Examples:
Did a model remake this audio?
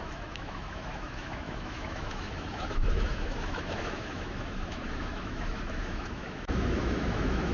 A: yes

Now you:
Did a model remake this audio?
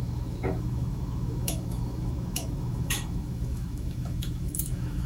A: yes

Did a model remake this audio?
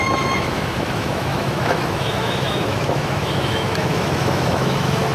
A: yes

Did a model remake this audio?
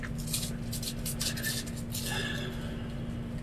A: no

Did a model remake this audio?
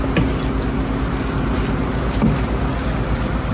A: no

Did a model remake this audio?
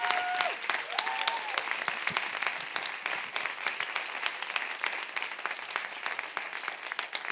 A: no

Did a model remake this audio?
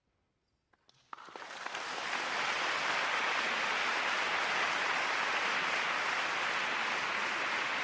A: no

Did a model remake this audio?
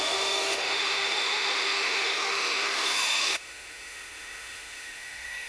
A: yes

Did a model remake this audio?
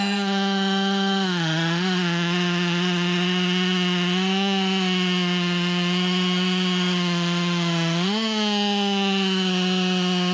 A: yes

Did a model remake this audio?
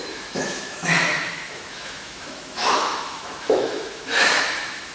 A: yes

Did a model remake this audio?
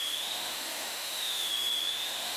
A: yes